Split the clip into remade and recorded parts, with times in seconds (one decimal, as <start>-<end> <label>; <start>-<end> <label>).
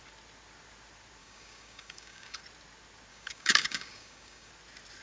0.0-1.2 recorded; 1.2-2.4 remade; 2.4-3.1 recorded; 3.1-4.5 remade; 4.5-5.0 recorded